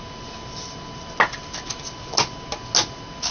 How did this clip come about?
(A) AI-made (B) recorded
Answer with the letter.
B